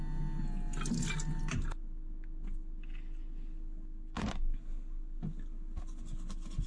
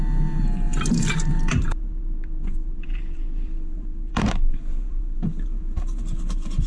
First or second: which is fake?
second